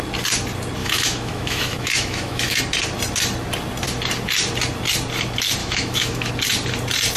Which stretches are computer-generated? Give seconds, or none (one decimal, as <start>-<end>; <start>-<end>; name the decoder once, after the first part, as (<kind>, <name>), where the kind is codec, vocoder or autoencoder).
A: 0.8-2.6 (autoencoder, DAC-VAE); 5.6-6.3

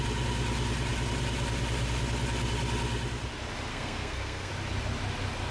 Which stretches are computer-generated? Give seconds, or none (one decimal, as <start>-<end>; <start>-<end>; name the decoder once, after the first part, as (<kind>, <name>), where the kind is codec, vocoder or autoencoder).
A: 3.7-4.5 (codec, SNAC)

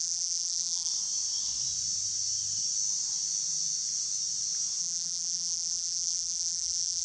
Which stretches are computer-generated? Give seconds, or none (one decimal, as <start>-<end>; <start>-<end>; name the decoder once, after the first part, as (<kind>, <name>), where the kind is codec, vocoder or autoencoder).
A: 0.0-0.9 (vocoder, BigVGAN v2); 4.8-7.0

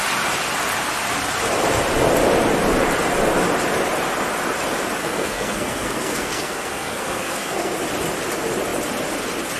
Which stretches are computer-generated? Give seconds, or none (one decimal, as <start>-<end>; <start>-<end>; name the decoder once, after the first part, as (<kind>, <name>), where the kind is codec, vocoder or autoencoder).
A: 5.0-7.7 (codec, SNAC)

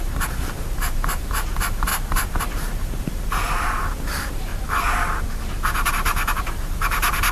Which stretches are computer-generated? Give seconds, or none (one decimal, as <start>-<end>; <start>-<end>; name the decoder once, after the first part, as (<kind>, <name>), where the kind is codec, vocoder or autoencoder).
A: 0.0-4.5 (vocoder, BigVGAN v2); 5.9-7.3